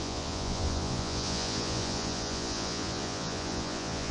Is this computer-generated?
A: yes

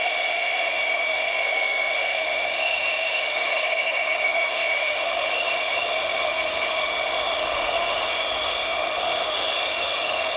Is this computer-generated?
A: yes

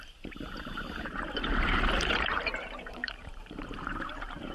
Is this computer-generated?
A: yes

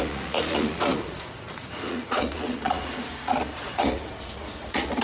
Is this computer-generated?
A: yes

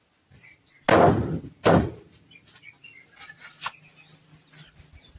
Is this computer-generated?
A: no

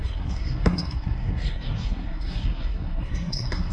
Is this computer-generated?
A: yes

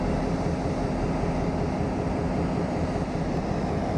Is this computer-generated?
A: yes